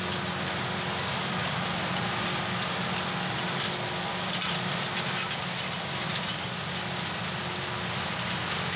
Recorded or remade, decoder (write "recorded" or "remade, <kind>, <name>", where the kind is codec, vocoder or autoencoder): recorded